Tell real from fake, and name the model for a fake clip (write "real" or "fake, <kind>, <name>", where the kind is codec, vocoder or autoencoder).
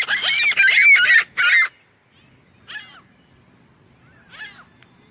real